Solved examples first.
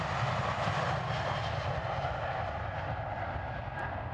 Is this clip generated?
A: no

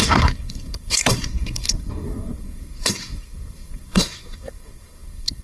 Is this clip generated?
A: yes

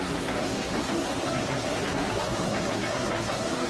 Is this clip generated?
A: yes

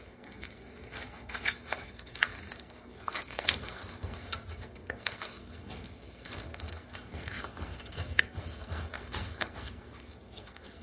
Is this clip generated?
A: yes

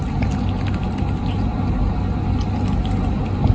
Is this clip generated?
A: no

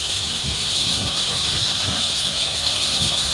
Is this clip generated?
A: yes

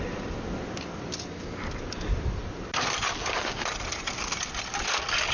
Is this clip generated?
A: no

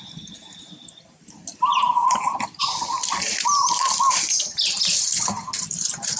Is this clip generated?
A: no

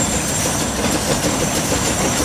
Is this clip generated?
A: no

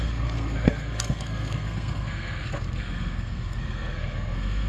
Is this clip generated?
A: yes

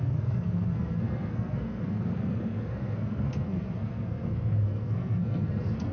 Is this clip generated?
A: yes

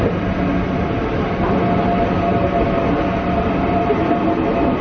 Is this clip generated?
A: no